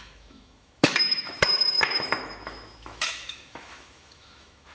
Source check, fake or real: fake